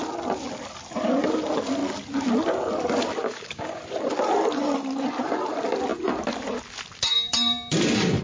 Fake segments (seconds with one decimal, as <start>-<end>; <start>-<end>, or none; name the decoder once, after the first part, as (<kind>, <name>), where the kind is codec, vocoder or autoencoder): 3.2-3.8 (codec, DAC)